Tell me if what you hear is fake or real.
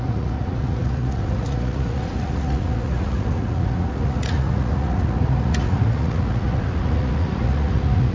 fake